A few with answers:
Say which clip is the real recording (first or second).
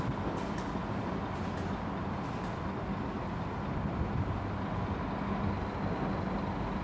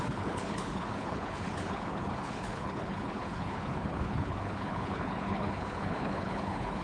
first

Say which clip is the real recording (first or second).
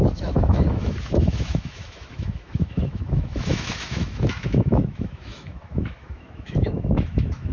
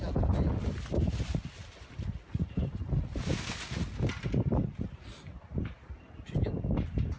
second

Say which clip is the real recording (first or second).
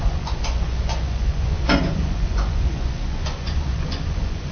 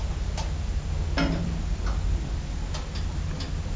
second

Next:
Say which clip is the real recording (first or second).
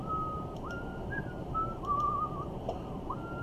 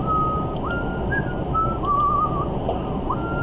second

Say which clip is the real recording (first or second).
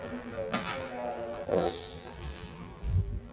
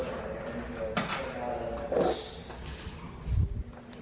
second